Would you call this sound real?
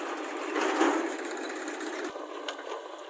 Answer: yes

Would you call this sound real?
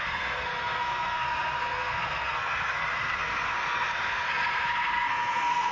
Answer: no